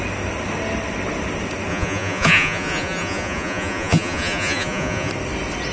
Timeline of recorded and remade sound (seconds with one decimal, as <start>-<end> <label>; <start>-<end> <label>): 0.0-1.7 recorded; 1.7-5.1 remade; 5.1-5.7 recorded